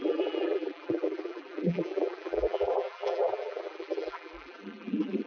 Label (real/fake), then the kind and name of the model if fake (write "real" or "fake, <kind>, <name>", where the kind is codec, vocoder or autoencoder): fake, vocoder, BigVGAN v2